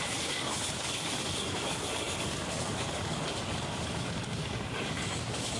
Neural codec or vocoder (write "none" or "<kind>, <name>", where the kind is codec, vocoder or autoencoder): codec, DAC